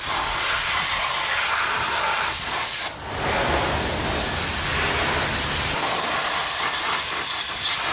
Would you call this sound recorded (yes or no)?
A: yes